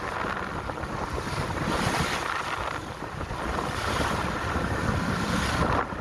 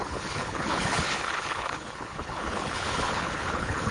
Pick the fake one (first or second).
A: second